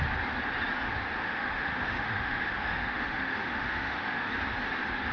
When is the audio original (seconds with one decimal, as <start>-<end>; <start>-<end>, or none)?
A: 0.0-1.2; 4.3-5.1